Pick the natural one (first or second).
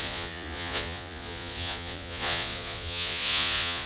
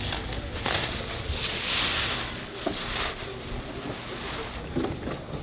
second